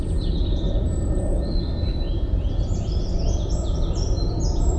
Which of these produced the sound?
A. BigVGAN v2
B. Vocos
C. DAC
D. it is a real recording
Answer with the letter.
D